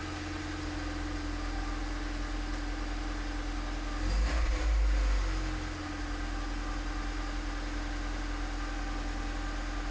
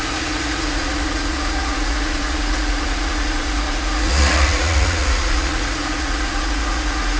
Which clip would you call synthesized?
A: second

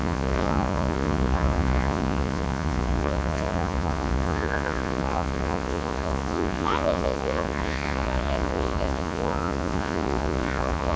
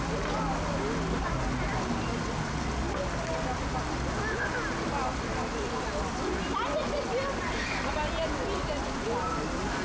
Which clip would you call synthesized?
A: first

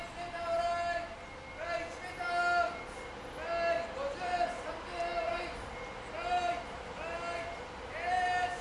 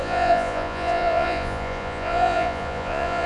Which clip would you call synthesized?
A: second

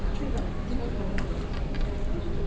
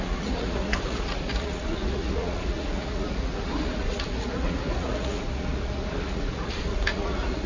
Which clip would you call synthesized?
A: second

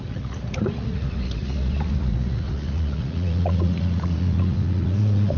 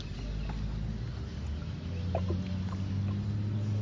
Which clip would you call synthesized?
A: first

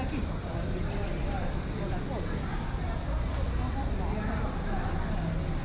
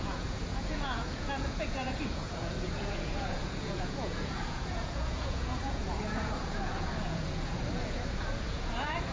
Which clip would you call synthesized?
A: second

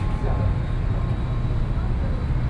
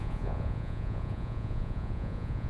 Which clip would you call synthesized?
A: second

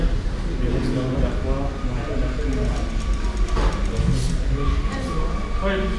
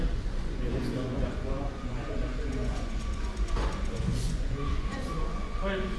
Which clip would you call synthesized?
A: second